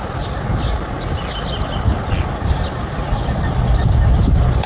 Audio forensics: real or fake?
real